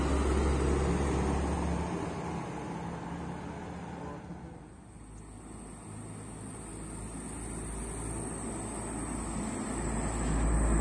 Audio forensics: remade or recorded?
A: recorded